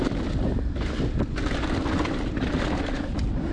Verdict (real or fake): real